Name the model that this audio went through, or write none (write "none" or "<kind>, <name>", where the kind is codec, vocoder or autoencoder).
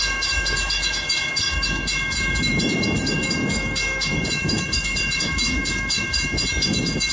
autoencoder, DAC-VAE